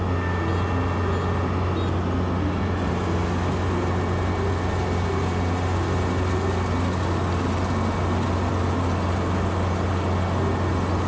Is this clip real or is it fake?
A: real